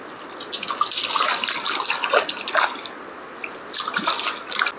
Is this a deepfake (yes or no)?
no